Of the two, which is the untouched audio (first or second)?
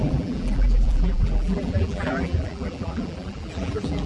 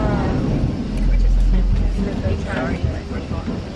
second